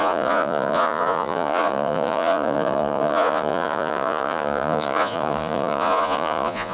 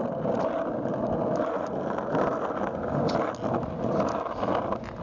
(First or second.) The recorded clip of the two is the second